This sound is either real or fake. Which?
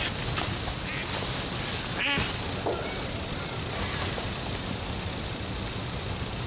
real